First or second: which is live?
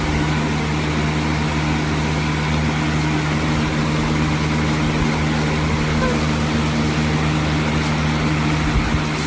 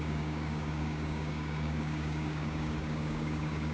first